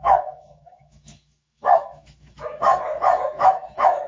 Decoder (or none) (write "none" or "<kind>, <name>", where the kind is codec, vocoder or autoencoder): autoencoder, DAC-VAE